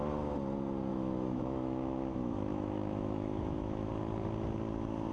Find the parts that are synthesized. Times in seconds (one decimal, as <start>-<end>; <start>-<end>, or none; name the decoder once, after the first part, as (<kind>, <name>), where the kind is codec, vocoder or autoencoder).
0.9-3.9 (autoencoder, DAC-VAE)